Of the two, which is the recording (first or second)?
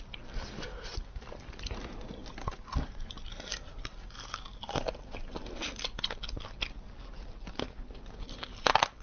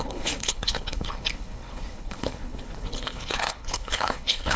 first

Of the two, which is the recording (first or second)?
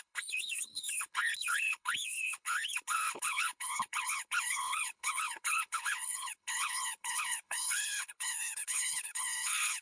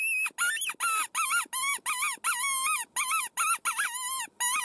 second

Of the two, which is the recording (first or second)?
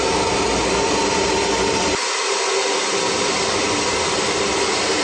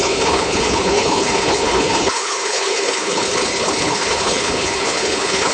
first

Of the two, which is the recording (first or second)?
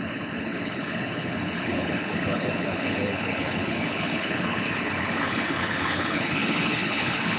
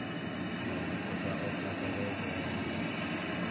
second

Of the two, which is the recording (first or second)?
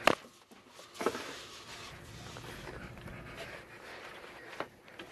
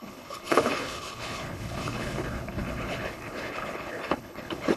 first